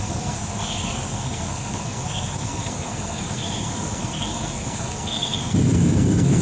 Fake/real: fake